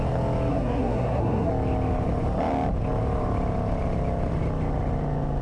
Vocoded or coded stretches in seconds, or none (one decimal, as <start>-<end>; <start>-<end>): 0.5-1.5